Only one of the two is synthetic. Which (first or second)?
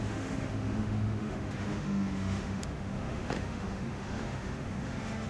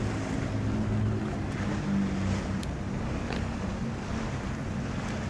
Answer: first